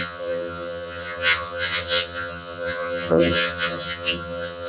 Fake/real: fake